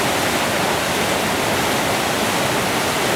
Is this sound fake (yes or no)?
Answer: no